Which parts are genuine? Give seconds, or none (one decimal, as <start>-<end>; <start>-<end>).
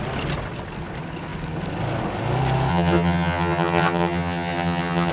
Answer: 0.0-2.7